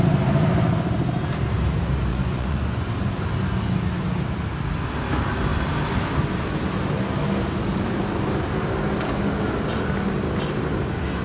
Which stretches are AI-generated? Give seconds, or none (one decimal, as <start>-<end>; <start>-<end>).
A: 2.1-2.9